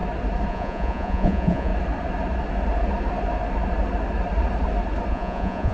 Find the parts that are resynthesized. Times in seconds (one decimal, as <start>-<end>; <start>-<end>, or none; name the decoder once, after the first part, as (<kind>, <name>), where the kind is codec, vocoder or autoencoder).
0.5-1.7 (vocoder, Vocos); 5.1-5.7